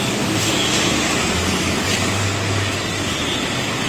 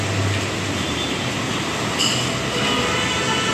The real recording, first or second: second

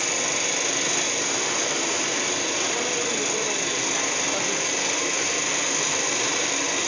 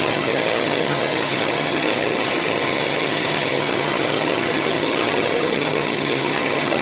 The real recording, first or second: first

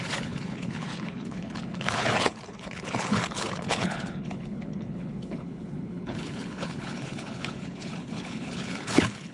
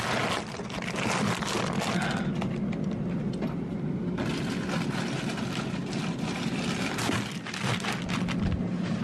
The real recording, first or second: second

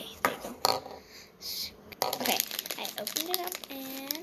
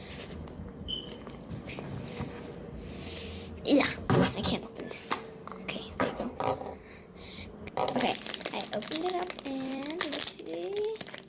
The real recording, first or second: first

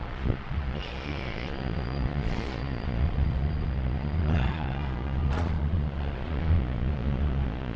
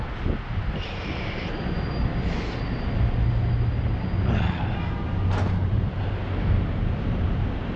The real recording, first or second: second